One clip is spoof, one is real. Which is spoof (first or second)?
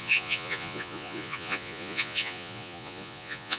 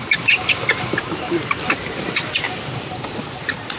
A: first